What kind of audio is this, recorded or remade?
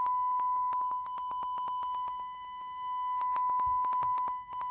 remade